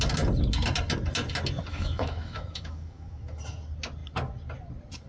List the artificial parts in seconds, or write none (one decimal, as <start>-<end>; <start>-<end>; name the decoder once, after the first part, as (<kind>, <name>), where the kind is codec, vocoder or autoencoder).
1.7-3.4 (autoencoder, DAC-VAE)